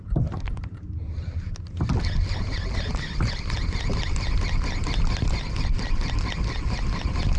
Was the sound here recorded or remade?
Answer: recorded